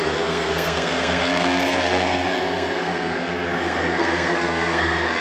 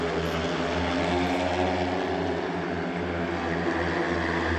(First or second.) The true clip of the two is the second